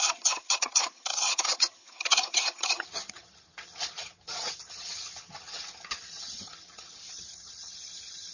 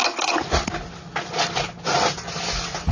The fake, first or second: first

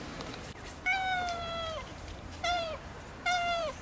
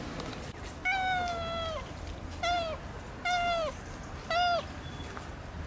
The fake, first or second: first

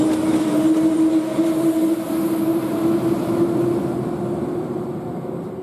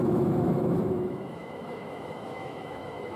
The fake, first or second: second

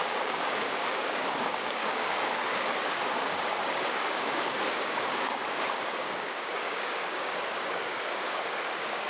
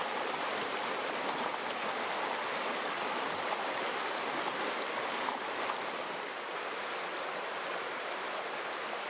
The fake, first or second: first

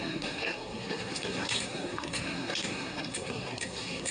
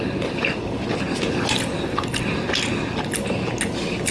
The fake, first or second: first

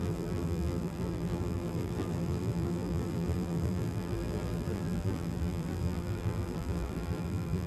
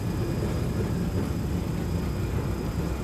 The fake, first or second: first